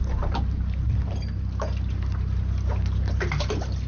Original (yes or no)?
yes